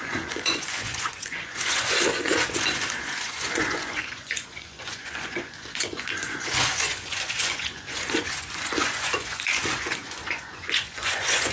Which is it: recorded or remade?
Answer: remade